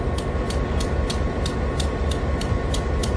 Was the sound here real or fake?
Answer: real